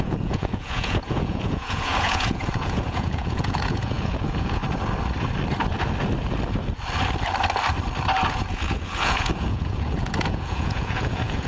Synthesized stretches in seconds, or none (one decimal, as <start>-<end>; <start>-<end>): 0.0-4.6; 8.3-11.5